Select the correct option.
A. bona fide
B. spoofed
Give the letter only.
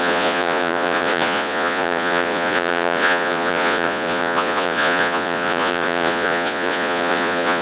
B